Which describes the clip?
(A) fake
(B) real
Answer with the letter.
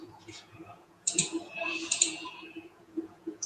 A